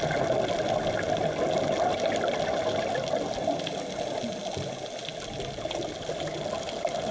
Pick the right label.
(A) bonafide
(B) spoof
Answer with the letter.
A